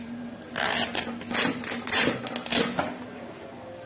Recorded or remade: recorded